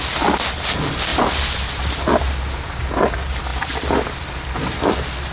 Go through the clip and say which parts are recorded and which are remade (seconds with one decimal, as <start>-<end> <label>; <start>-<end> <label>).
0.0-5.3 recorded